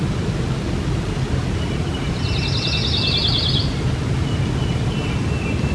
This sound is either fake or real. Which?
real